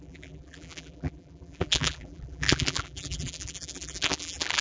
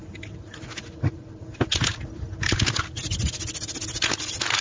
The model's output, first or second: first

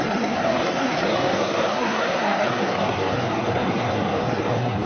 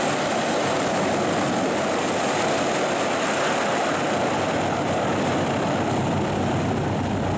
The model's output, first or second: first